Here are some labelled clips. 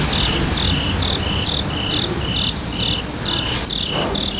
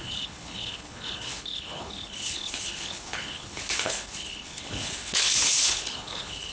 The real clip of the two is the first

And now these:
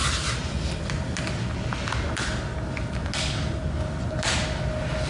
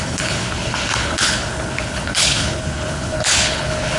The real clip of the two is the first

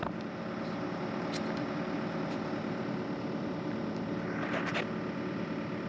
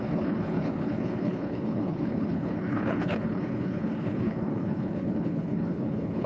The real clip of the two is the first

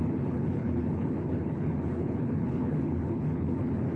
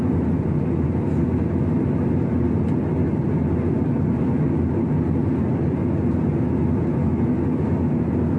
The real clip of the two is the second